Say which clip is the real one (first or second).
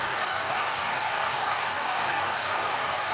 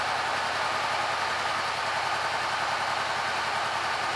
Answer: second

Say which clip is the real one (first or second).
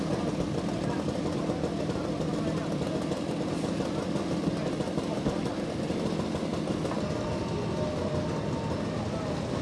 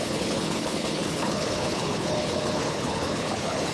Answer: first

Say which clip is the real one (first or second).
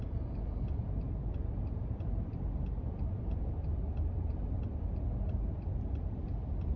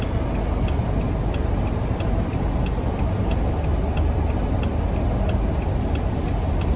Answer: second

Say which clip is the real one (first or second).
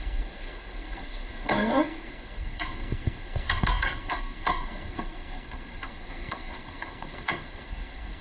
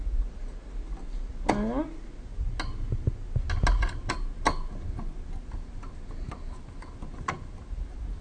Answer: second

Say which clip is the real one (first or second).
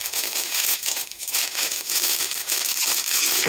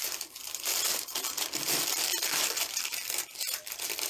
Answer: second